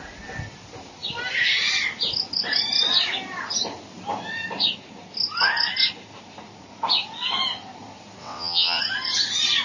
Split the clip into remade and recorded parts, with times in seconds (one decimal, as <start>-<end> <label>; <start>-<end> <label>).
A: 0.0-8.2 recorded; 8.2-8.8 remade; 8.8-9.6 recorded